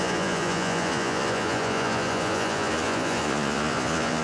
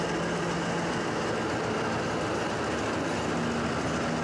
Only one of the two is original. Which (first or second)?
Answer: second